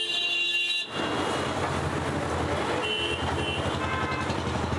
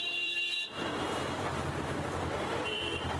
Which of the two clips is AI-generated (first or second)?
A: second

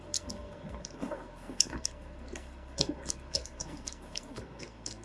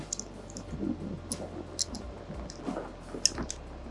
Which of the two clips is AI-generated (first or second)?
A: first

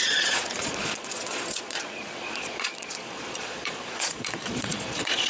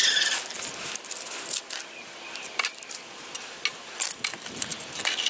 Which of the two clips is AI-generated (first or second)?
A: first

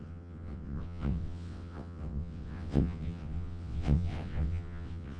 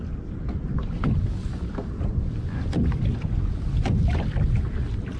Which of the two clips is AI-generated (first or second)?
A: first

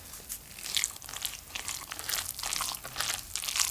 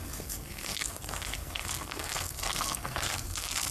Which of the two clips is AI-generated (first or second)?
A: second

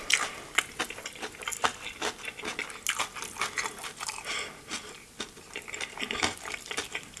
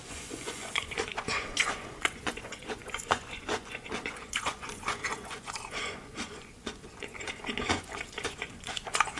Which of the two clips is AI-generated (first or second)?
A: second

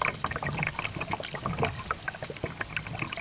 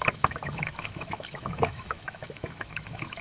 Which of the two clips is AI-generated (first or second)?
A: second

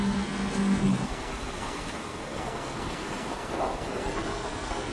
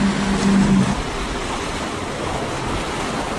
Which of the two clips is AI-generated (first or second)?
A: first